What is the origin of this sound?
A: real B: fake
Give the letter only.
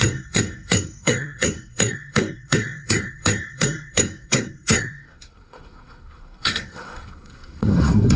B